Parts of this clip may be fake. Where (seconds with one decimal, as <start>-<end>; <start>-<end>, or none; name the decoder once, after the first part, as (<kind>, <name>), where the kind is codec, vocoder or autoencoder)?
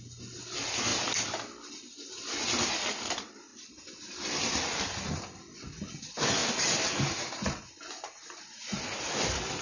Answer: 3.5-4.6 (vocoder, BigVGAN v2)